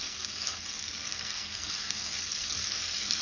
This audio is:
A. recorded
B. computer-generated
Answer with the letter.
B